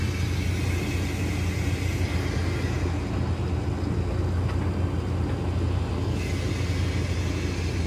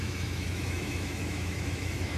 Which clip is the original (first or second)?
first